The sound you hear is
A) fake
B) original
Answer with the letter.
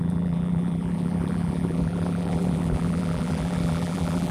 A